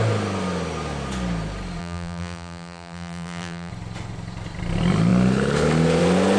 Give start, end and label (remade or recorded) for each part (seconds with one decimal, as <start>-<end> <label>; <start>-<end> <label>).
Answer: 0.0-1.8 recorded; 1.8-3.7 remade; 3.7-6.4 recorded